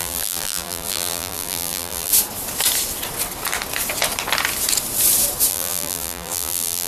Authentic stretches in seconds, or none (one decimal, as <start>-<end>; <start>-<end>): 2.1-5.5